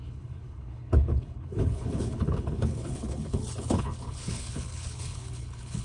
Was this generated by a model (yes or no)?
yes